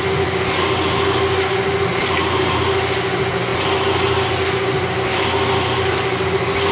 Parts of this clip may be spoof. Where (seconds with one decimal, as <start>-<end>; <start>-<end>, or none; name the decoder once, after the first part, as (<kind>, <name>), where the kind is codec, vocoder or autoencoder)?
1.9-2.6 (vocoder, BigVGAN v2)